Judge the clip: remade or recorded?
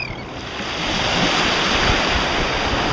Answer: recorded